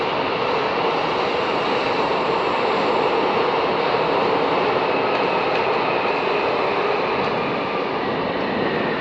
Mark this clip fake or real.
real